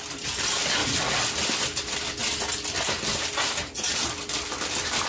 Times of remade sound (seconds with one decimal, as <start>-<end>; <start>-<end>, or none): 0.8-1.5